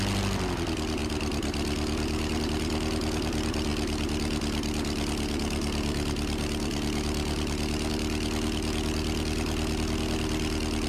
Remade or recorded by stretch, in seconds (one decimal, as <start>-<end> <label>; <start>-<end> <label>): 0.0-10.9 recorded